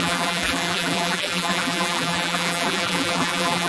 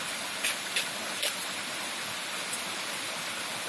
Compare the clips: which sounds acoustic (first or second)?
second